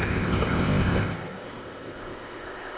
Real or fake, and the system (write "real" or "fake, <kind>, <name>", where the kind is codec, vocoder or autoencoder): fake, codec, ZipCodec